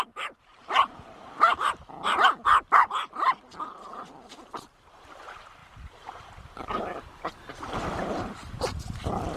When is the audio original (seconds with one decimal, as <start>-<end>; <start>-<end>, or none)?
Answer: 0.0-0.5; 1.7-5.6; 6.8-9.4

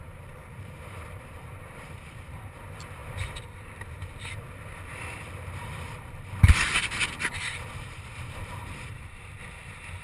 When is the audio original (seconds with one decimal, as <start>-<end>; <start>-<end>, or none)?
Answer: none

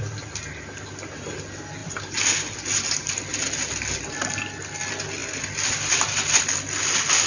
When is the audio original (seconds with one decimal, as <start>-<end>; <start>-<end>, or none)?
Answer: 0.0-1.8; 3.7-7.3